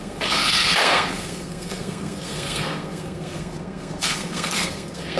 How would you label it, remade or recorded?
remade